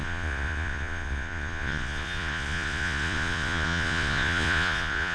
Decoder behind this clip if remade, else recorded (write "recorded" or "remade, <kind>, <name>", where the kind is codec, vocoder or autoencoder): remade, vocoder, Vocos